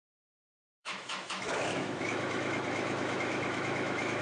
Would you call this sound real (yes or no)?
no